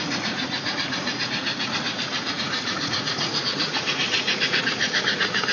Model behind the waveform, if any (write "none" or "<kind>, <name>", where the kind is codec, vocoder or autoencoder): vocoder, Vocos